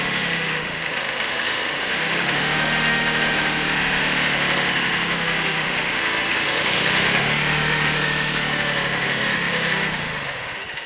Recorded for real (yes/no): no